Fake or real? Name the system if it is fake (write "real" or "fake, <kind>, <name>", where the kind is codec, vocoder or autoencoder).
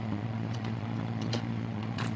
fake, vocoder, Vocos